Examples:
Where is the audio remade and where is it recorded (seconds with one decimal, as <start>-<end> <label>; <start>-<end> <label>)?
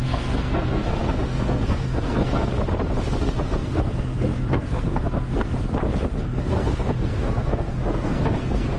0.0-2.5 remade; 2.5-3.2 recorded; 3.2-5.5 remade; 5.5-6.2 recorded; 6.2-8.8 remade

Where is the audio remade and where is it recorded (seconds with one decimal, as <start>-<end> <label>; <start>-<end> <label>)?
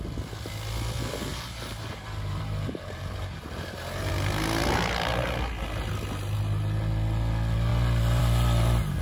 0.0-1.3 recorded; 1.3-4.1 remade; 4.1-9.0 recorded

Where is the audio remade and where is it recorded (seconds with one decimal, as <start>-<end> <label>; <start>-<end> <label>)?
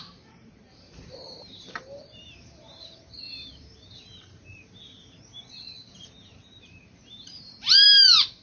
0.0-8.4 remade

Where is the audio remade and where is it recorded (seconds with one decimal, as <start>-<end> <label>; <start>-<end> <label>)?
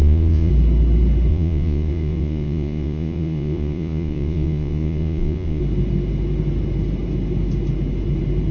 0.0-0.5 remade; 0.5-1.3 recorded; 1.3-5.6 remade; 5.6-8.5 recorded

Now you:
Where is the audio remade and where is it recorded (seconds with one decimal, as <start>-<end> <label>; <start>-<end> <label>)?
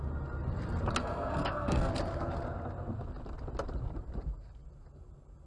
0.0-1.0 recorded; 1.0-1.9 remade; 1.9-5.5 recorded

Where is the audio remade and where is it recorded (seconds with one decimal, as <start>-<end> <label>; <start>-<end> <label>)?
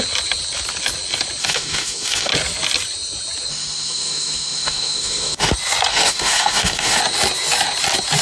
0.0-1.4 recorded; 1.4-2.3 remade; 2.3-3.5 recorded; 3.5-5.5 remade; 5.5-5.9 recorded; 5.9-7.0 remade; 7.0-8.2 recorded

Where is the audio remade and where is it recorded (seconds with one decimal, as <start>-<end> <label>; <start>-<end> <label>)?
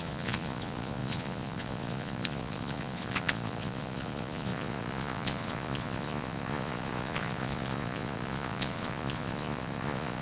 0.0-10.2 remade